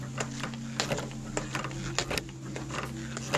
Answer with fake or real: real